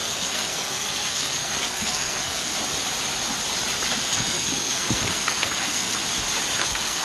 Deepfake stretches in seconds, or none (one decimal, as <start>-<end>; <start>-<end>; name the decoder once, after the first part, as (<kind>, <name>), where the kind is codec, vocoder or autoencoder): 0.0-2.5 (codec, SNAC); 4.0-6.0; 6.6-7.0